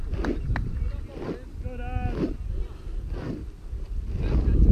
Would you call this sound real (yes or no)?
yes